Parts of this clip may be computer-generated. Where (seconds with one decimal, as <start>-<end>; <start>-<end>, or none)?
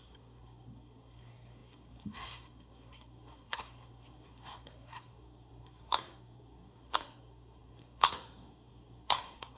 0.0-9.6